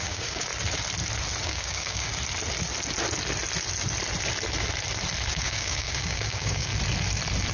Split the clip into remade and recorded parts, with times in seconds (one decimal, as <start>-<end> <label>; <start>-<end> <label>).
0.0-0.5 remade; 0.5-1.4 recorded; 1.4-2.1 remade; 2.1-5.3 recorded; 5.3-6.7 remade; 6.7-7.5 recorded